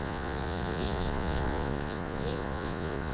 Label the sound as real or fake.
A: fake